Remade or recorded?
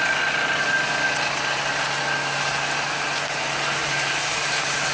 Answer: recorded